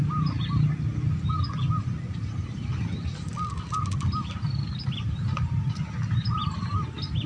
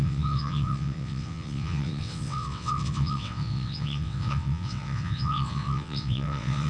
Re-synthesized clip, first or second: second